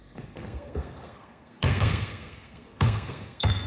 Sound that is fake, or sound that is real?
fake